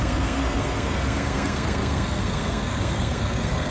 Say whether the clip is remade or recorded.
remade